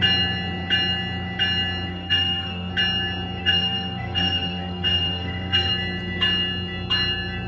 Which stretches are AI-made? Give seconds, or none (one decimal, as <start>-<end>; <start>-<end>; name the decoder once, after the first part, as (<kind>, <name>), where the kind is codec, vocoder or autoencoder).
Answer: 1.9-2.7 (codec, SNAC); 3.4-5.7